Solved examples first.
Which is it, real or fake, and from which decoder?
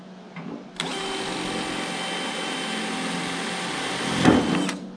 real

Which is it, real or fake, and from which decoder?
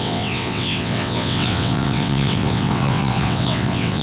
fake, vocoder, WaveNeXt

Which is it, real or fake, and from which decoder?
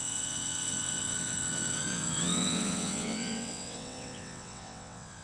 fake, vocoder, WaveNeXt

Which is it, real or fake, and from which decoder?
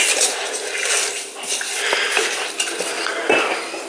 real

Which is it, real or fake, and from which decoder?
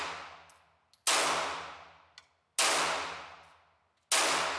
real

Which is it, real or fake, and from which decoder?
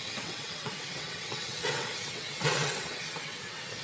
fake, vocoder, WaveNeXt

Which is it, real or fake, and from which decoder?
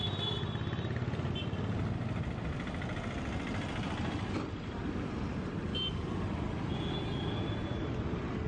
real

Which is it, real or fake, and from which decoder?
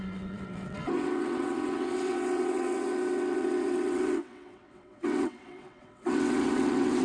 fake, vocoder, WaveNeXt